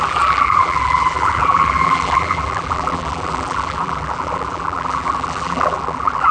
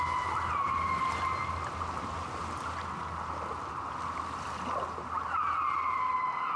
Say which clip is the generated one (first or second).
first